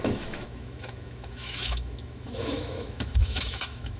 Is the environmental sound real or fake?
fake